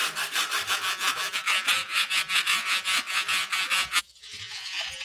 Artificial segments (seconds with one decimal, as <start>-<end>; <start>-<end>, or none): 0.7-5.0